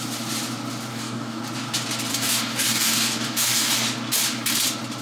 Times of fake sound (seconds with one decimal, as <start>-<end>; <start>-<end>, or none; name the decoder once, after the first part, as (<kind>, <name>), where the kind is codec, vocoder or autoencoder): 0.9-1.4 (codec, DAC); 2.1-3.7